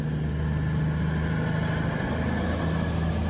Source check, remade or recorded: recorded